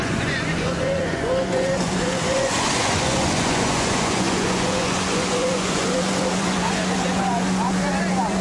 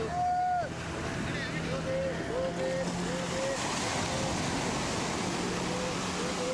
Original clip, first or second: second